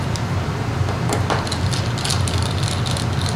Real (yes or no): yes